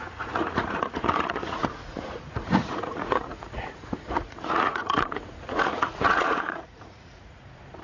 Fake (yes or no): yes